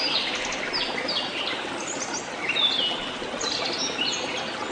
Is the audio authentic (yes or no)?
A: yes